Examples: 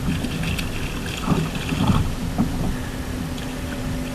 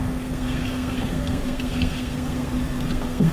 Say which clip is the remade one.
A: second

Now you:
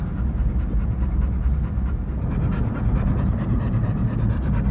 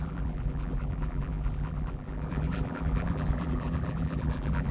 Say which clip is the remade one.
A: second